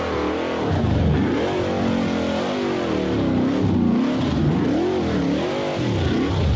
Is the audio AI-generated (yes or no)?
no